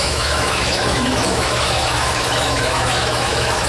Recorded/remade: remade